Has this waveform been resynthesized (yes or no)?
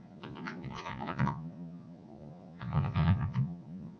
yes